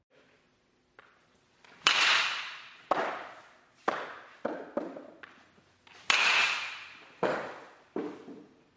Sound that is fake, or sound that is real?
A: real